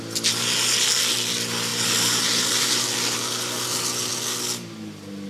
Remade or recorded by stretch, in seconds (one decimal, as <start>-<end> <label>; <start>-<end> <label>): 0.0-5.3 recorded